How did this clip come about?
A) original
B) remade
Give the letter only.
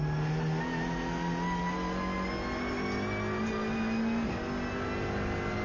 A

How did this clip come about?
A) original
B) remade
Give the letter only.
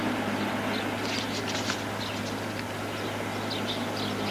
A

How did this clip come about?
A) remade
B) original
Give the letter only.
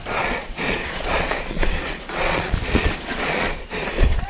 A